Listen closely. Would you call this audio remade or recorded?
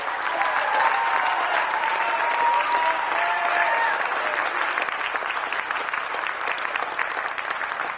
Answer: recorded